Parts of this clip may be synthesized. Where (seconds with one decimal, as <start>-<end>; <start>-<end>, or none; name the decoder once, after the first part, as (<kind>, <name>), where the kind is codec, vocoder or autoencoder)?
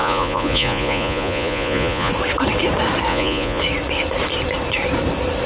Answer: 0.0-2.1 (vocoder, Vocos); 3.1-3.6